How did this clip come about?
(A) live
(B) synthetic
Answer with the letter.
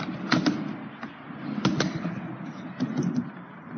A